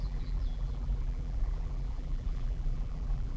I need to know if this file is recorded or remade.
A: remade